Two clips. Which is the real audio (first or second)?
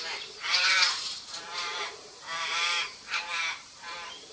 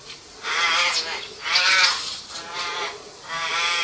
second